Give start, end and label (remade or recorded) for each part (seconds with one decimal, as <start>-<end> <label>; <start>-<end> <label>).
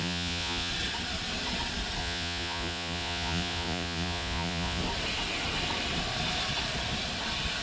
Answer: 0.0-0.7 remade; 0.7-2.0 recorded; 2.0-4.8 remade; 4.8-7.6 recorded